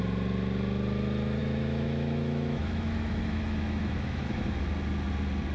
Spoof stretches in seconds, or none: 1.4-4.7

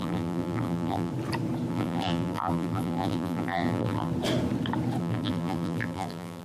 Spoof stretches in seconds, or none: 0.0-1.1; 1.7-4.1; 5.0-6.4

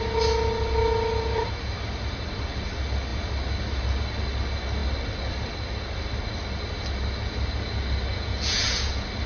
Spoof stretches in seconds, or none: 8.1-8.9

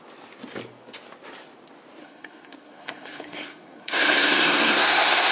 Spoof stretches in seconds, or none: 2.0-5.3

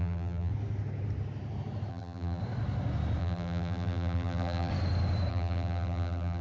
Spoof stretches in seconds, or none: 0.0-0.5; 1.9-2.4; 3.2-4.7; 5.3-6.4

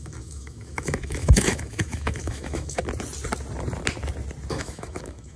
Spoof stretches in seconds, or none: 0.0-2.8; 4.5-5.4

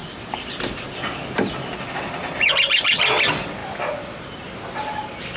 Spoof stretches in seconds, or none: none

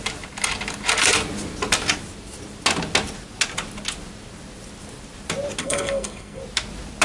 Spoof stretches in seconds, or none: 5.6-6.4